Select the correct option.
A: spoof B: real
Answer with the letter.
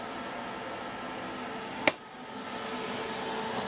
B